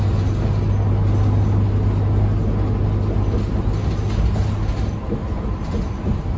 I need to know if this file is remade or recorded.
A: recorded